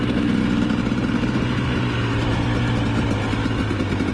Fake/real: real